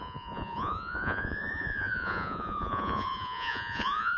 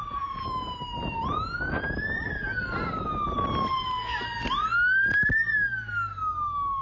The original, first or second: second